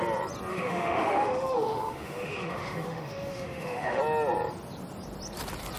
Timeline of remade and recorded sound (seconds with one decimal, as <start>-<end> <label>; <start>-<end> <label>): 0.0-0.5 recorded; 0.5-4.0 remade; 4.0-5.8 recorded

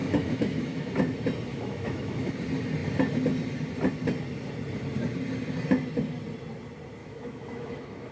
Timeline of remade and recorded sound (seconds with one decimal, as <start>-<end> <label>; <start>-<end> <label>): 0.0-0.9 remade; 0.9-1.5 recorded; 1.5-2.3 remade; 2.3-7.0 recorded; 7.0-8.1 remade